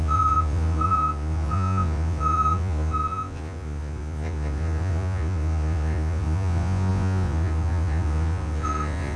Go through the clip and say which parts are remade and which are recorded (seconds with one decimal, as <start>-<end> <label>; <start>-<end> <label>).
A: 0.0-9.2 remade